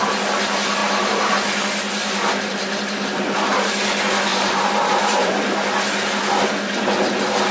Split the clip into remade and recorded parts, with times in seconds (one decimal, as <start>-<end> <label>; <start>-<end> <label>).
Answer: 0.0-0.8 recorded; 0.8-1.3 remade; 1.3-2.0 recorded; 2.0-3.7 remade; 3.7-4.3 recorded; 4.3-5.3 remade; 5.3-7.5 recorded